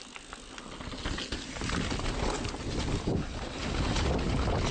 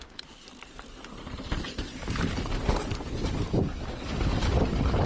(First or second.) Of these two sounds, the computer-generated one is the second